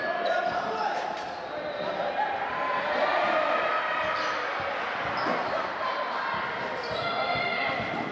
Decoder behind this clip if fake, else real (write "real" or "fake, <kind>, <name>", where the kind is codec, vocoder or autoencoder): real